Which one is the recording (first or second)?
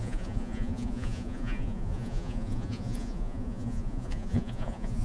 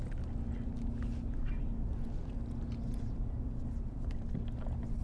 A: second